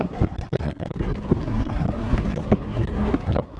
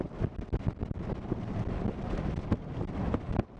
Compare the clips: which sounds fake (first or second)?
first